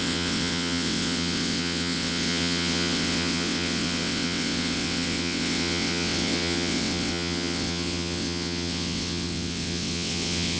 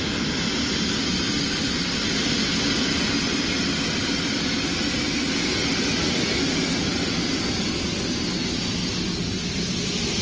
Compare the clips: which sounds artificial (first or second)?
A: first